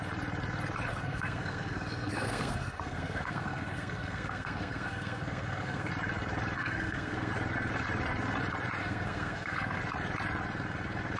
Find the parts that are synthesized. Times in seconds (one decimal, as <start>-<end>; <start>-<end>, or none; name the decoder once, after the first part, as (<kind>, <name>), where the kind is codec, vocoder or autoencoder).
0.9-5.9 (codec, SNAC); 6.6-7.3; 8.8-9.8